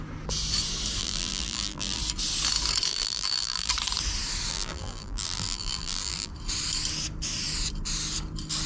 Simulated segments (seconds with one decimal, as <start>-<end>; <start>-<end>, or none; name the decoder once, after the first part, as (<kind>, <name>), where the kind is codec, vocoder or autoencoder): 1.0-2.0 (vocoder, BigVGAN v2); 2.9-3.7; 4.5-6.3